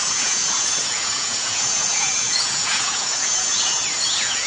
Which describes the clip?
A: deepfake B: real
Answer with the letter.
A